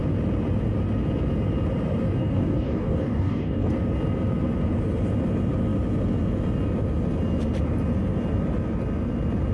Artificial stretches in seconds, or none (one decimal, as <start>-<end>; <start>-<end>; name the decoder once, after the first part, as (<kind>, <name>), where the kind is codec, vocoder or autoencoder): 2.2-3.7 (codec, DAC)